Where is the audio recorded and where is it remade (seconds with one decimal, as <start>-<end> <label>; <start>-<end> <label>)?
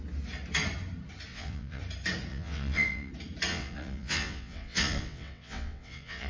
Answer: 0.0-1.3 recorded; 1.3-1.8 remade; 1.8-2.3 recorded; 2.3-3.1 remade; 3.1-3.5 recorded; 3.5-6.3 remade